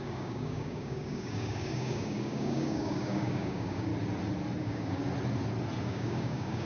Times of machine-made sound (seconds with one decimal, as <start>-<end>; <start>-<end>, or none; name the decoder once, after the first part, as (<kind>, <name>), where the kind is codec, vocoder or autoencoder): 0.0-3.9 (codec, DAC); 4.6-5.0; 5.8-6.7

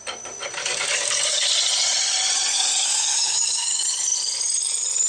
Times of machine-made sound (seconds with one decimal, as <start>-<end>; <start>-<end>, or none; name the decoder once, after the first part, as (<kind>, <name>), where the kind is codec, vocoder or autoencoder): 0.6-1.5 (codec, DAC); 2.5-3.8

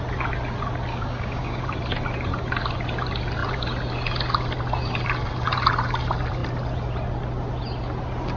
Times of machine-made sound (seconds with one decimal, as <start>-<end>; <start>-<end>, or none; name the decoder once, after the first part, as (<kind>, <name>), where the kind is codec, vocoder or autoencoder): 0.9-1.6 (codec, DAC)